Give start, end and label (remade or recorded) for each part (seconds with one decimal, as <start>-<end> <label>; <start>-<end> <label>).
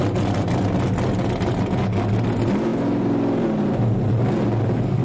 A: 0.0-5.0 recorded